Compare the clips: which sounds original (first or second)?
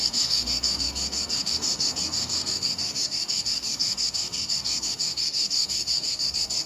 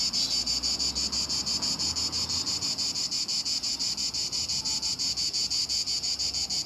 second